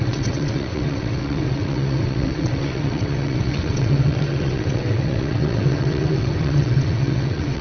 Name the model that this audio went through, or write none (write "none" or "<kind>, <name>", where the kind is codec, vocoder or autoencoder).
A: vocoder, WaveNeXt